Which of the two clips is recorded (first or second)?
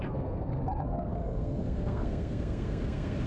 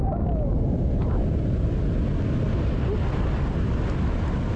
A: second